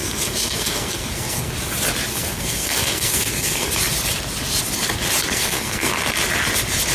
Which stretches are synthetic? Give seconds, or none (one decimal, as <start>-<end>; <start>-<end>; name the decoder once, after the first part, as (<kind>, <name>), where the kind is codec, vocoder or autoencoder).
0.0-1.5 (codec, SNAC); 2.1-3.7; 5.3-5.9